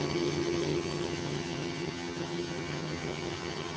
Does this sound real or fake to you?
fake